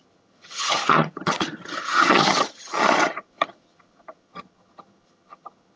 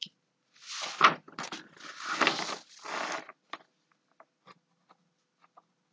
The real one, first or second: second